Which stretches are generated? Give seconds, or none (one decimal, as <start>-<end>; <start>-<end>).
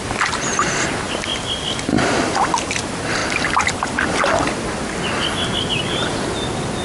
none